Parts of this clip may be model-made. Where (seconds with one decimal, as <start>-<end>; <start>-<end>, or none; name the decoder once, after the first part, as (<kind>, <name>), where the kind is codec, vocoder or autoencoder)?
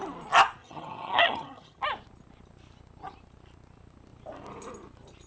0.6-1.8 (vocoder, HiFi-GAN)